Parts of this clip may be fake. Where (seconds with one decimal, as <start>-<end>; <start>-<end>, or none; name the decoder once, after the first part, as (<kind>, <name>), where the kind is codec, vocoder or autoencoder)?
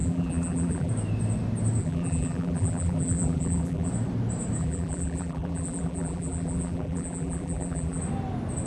0.0-0.9 (vocoder, BigVGAN v2); 1.8-3.9; 4.6-8.0